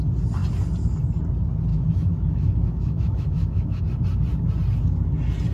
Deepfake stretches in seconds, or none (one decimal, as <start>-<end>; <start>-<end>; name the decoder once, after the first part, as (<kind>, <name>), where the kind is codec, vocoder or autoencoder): 1.7-3.8 (autoencoder, DAC-VAE)